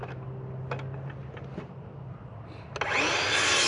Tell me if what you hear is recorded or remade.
recorded